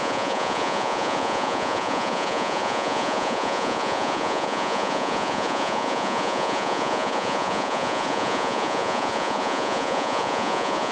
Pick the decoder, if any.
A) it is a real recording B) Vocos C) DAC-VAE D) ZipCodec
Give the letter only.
B